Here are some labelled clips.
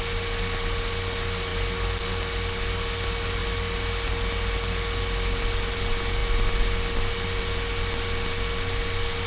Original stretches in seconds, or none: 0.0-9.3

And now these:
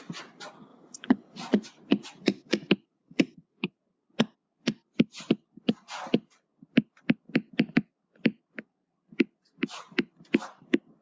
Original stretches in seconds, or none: 0.0-0.7; 3.8-11.0

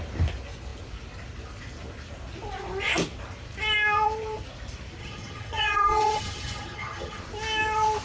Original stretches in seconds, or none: 0.0-5.0; 7.2-8.0

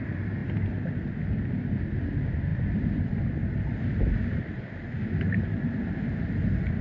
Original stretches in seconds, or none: 0.0-6.8

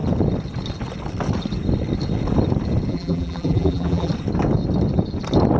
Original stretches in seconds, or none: 0.0-2.9; 4.1-5.6

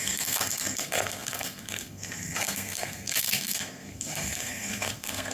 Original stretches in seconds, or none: none

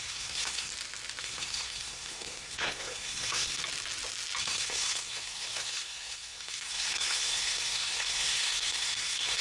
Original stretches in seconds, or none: 0.7-1.2; 3.6-4.4